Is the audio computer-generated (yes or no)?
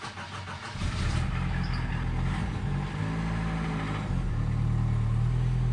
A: no